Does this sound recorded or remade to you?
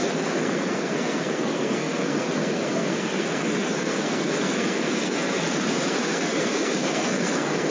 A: remade